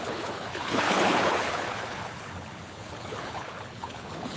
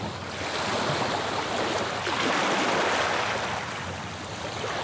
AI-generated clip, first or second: first